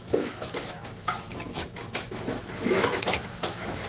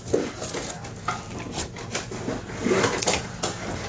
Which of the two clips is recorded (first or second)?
second